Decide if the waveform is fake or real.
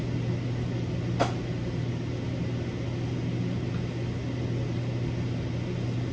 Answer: real